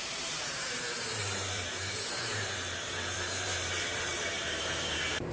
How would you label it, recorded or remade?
remade